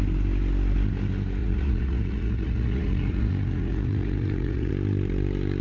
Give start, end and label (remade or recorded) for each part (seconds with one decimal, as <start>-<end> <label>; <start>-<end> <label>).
0.0-1.4 recorded; 1.4-4.7 remade; 4.7-5.6 recorded

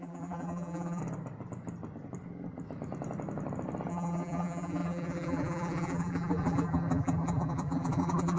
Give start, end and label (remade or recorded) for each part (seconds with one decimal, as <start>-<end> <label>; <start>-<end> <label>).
0.0-1.0 remade; 1.0-3.9 recorded; 3.9-8.4 remade

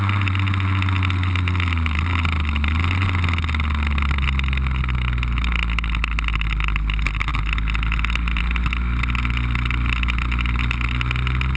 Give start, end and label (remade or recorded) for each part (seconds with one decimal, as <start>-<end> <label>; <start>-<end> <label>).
0.0-11.6 recorded

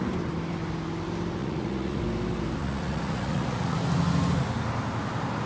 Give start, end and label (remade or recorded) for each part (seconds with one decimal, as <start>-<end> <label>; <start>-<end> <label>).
0.0-1.4 recorded; 1.4-2.0 remade; 2.0-2.6 recorded; 2.6-3.8 remade; 3.8-5.5 recorded

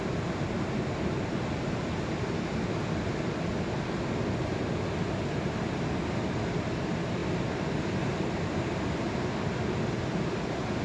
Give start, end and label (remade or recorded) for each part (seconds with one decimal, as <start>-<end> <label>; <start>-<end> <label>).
0.0-10.8 recorded

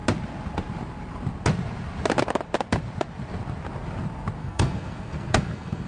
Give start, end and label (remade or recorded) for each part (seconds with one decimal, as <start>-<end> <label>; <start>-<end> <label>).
0.0-4.4 recorded; 4.4-5.9 remade

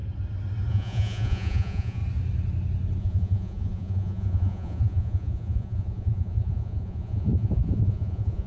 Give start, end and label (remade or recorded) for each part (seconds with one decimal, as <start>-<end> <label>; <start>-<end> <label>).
0.0-0.7 recorded; 0.7-2.0 remade; 2.0-3.0 recorded; 3.0-8.5 remade